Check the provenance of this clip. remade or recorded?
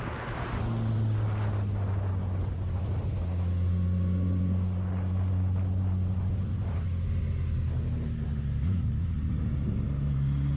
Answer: recorded